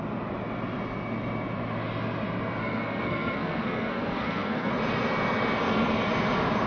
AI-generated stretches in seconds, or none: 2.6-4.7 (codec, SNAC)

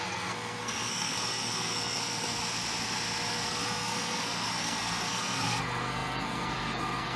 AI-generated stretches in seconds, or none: 0.0-2.4 (codec, SNAC); 3.3-7.2

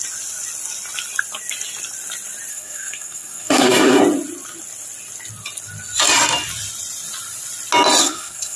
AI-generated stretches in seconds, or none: 2.5-4.0 (codec, SNAC); 8.0-8.6

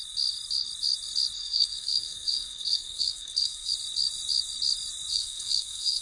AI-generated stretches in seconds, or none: 1.4-3.7 (codec, SNAC); 5.1-6.0

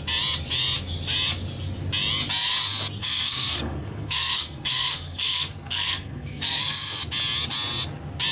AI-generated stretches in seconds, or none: 3.0-7.0 (codec, SNAC)